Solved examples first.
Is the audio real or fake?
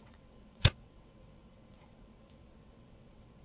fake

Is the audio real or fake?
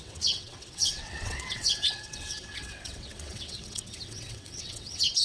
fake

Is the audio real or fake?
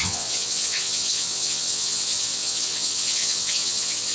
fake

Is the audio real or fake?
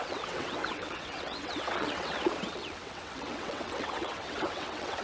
fake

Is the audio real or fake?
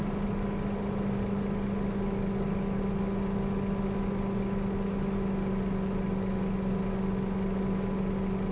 real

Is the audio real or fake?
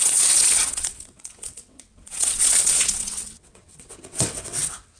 fake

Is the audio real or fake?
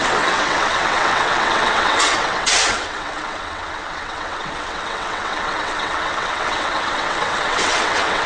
fake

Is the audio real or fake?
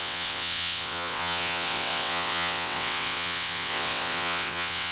fake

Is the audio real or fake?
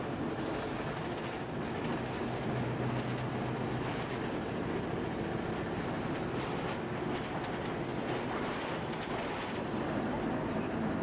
real